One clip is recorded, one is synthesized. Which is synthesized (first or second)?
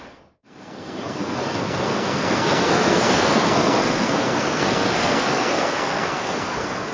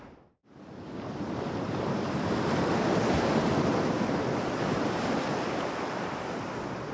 first